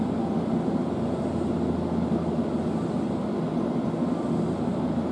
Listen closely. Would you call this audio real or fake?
real